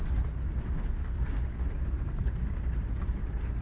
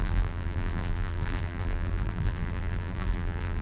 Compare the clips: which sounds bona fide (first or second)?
first